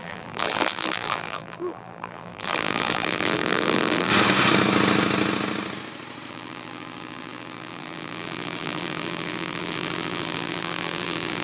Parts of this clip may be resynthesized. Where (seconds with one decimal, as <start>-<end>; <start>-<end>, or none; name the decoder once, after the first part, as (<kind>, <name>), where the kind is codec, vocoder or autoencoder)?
0.0-4.1 (vocoder, BigVGAN v2); 6.3-11.4